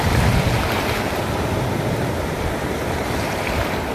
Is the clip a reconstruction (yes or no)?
no